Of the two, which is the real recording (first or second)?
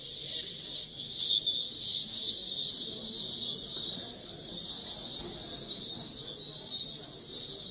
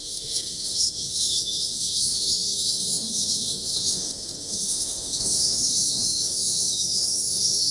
first